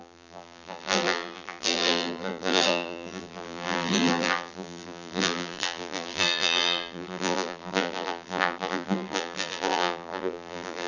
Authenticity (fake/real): fake